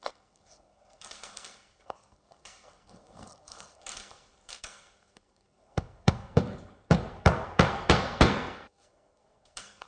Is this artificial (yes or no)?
yes